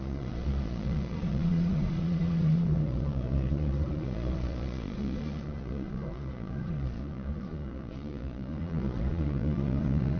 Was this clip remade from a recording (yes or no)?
yes